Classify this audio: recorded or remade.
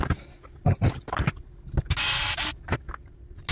recorded